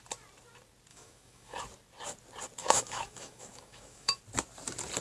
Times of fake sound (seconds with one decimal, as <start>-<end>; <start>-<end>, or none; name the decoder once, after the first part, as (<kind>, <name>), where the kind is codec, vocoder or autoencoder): 0.9-1.6 (autoencoder, DAC-VAE); 2.6-4.2